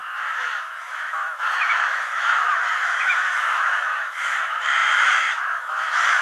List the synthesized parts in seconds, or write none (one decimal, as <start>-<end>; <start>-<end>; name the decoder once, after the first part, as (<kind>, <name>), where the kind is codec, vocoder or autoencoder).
0.0-6.2 (autoencoder, DAC-VAE)